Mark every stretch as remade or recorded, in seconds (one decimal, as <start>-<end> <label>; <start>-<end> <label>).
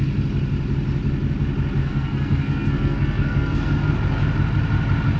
0.0-1.8 recorded; 1.8-3.9 remade; 3.9-5.2 recorded